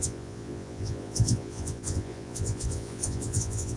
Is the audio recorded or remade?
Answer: remade